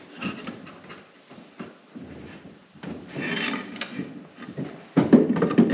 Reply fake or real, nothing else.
real